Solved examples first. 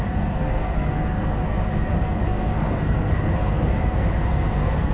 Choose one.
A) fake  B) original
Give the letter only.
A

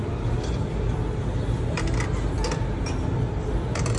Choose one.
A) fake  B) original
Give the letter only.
B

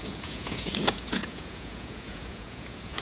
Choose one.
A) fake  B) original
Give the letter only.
A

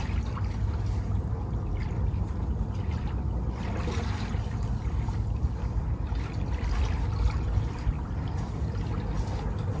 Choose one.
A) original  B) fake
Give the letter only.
A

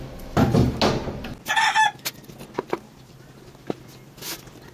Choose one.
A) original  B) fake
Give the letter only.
A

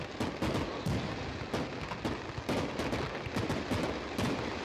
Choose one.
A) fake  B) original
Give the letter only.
B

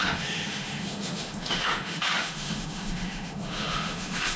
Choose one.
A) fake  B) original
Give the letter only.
A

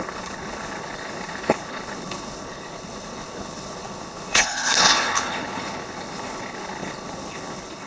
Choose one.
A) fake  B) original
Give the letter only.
A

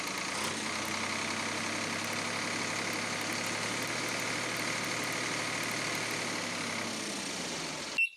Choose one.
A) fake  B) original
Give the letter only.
B